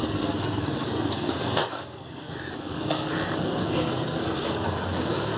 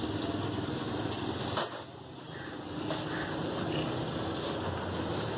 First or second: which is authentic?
second